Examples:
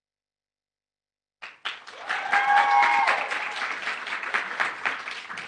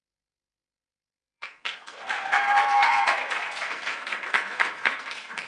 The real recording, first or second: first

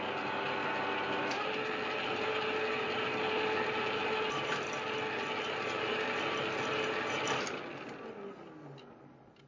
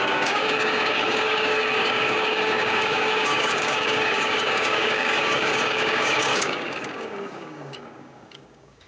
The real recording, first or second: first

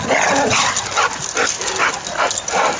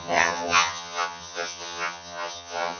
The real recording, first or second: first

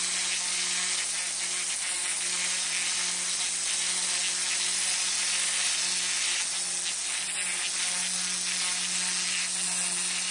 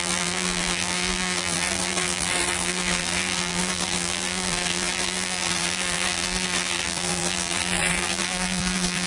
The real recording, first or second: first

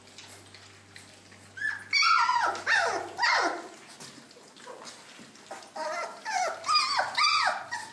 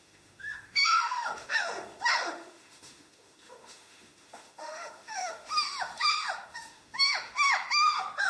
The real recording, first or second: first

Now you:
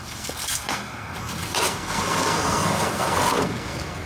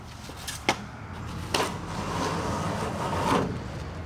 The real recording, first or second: second